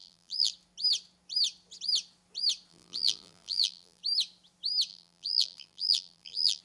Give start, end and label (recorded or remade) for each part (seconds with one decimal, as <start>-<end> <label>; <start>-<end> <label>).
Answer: 0.0-0.5 remade; 0.5-2.7 recorded; 2.7-4.0 remade; 4.0-4.9 recorded; 4.9-6.6 remade